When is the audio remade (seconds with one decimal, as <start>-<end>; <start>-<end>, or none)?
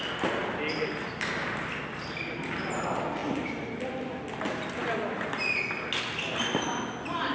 none